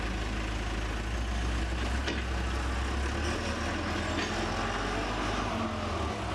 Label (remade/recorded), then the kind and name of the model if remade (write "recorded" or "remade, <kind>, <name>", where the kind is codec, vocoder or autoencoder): recorded